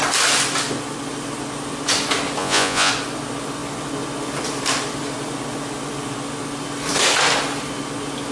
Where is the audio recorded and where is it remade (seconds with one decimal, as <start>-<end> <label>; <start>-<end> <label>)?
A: 0.0-2.4 recorded; 2.4-2.9 remade; 2.9-8.3 recorded